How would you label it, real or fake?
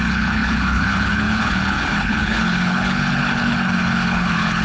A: fake